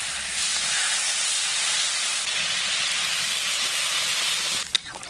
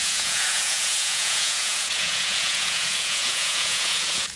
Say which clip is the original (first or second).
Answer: first